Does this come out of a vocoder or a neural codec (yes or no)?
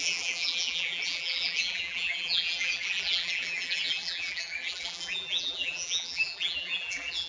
yes